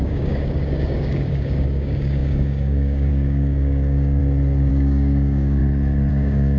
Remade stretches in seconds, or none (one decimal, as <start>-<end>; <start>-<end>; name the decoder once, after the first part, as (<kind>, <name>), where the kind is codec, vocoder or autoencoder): 0.0-4.2 (codec, DAC); 4.7-5.6; 6.1-6.6